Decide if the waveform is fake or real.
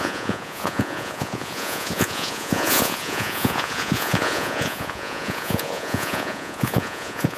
fake